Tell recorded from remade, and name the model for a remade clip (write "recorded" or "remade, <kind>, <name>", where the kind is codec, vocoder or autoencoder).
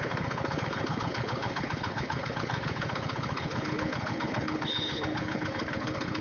remade, codec, HILCodec